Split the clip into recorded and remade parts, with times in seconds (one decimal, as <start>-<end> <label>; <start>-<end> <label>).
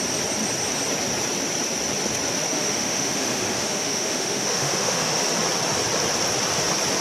0.0-2.5 recorded; 2.5-5.2 remade; 5.2-7.0 recorded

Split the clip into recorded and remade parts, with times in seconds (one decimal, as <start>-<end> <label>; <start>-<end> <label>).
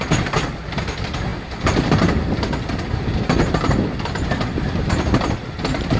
0.0-6.0 recorded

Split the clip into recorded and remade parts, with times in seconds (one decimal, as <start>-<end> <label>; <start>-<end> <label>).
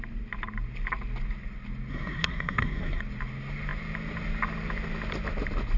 0.0-1.9 recorded; 1.9-3.0 remade; 3.0-5.8 recorded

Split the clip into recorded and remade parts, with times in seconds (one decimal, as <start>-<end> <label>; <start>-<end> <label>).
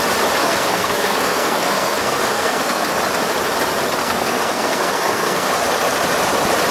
0.0-0.4 recorded; 0.4-2.9 remade; 2.9-4.0 recorded; 4.0-5.5 remade; 5.5-6.7 recorded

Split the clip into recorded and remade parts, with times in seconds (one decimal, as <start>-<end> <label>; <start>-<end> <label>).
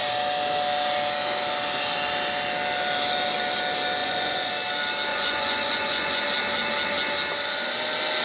0.0-4.0 recorded; 4.0-4.5 remade; 4.5-5.1 recorded; 5.1-6.2 remade; 6.2-8.2 recorded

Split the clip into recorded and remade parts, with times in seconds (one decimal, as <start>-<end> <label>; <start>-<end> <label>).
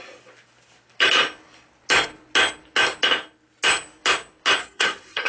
0.0-4.6 recorded; 4.6-5.3 remade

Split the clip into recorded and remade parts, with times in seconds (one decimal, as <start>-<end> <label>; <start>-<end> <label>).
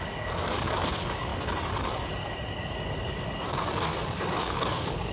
0.0-1.3 remade; 1.3-3.5 recorded; 3.5-5.1 remade